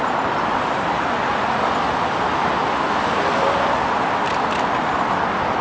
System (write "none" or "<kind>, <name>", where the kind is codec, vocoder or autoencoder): none